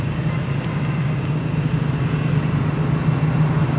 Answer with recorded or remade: recorded